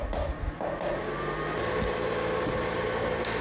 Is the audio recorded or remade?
recorded